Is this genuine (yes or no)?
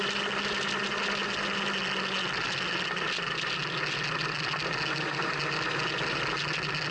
yes